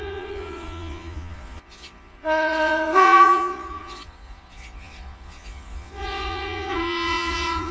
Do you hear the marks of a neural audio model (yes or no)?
yes